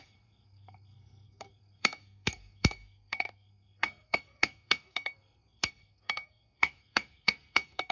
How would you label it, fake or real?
fake